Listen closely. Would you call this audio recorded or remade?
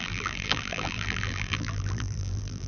remade